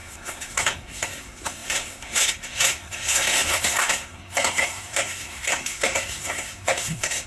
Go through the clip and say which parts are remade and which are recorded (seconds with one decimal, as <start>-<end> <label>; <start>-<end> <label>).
0.0-7.3 remade